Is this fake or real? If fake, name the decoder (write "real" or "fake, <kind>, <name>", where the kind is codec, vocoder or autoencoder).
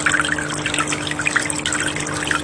real